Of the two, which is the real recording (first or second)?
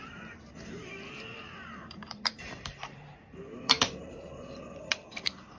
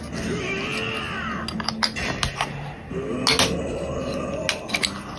second